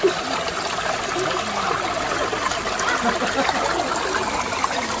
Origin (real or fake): real